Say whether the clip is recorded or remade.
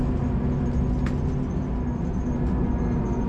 recorded